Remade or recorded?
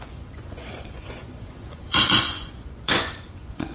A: remade